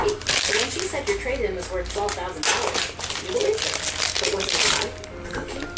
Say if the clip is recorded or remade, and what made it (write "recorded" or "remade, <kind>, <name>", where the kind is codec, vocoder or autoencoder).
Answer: recorded